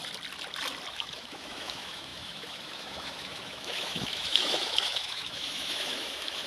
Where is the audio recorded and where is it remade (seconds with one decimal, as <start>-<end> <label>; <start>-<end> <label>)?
0.0-0.9 recorded; 0.9-6.5 remade